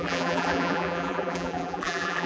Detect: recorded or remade remade